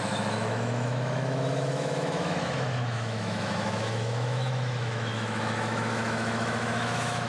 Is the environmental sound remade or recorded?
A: remade